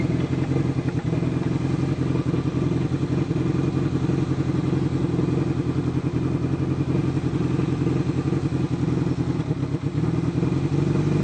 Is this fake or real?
real